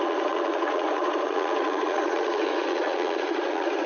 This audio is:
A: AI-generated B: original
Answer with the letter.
A